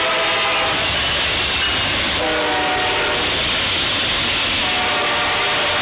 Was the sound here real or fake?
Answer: real